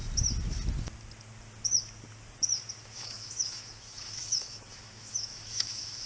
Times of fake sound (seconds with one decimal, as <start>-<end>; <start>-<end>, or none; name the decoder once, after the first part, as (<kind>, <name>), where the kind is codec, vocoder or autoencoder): 2.8-6.1 (autoencoder, DAC-VAE)